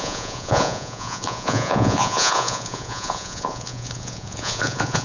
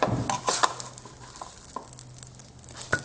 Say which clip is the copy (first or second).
first